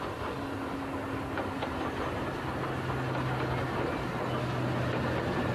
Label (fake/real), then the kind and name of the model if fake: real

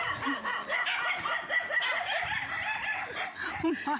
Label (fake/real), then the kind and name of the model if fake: real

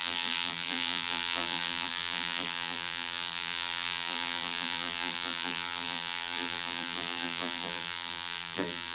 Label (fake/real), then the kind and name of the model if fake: fake, vocoder, BigVGAN v2